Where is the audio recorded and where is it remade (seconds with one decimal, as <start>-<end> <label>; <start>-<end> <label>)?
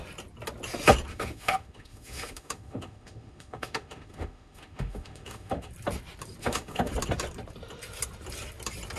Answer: 0.0-1.1 recorded; 1.1-5.7 remade; 5.7-6.4 recorded; 6.4-6.9 remade; 6.9-9.0 recorded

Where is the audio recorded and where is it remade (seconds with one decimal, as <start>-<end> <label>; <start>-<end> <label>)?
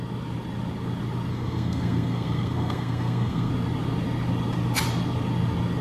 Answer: 0.0-1.3 recorded; 1.3-3.5 remade; 3.5-5.8 recorded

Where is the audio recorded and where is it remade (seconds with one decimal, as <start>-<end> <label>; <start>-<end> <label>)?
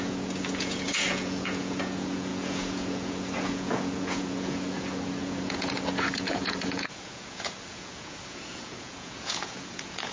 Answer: 0.0-10.1 remade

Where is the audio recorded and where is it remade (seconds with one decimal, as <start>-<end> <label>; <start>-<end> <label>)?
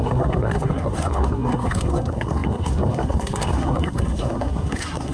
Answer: 0.0-5.1 remade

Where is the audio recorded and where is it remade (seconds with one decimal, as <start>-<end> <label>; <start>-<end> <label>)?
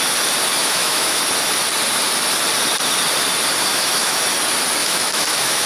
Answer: 0.0-0.6 recorded; 0.6-1.2 remade; 1.2-3.7 recorded; 3.7-4.2 remade; 4.2-4.8 recorded; 4.8-5.7 remade